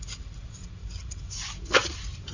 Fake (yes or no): no